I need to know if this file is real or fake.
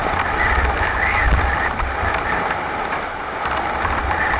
real